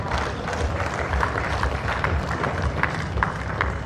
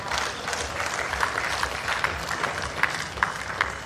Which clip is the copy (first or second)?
first